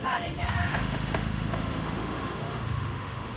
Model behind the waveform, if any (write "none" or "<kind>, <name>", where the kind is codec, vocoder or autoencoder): autoencoder, DAC-VAE